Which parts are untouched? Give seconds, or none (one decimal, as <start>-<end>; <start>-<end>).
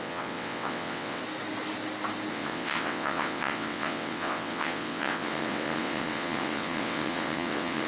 1.2-2.3